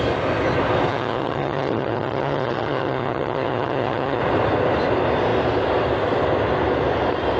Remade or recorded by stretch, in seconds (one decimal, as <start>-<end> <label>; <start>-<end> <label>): 0.0-0.9 recorded; 0.9-4.2 remade; 4.2-7.4 recorded